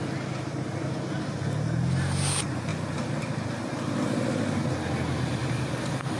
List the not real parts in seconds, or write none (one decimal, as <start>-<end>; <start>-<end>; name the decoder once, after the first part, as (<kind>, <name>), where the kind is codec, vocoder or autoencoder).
5.4-6.2 (vocoder, BigVGAN v2)